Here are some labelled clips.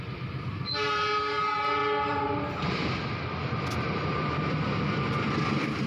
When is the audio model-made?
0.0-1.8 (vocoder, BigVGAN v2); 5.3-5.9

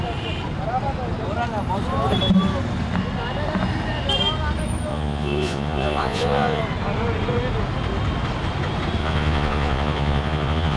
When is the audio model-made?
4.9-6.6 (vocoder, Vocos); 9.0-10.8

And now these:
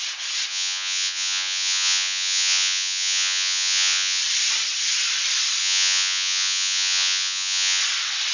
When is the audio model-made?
0.5-4.2 (vocoder, Vocos); 5.6-7.8

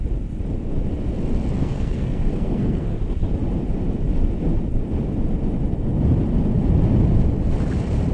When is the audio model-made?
1.6-3.0 (codec, SNAC)